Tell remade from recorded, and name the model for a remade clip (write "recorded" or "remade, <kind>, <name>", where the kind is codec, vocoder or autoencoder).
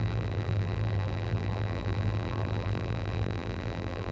remade, vocoder, BigVGAN v2